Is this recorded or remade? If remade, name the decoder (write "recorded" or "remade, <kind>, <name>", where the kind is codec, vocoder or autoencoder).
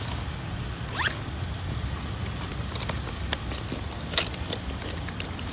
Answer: recorded